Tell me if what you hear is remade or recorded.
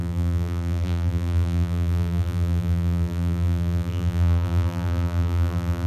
remade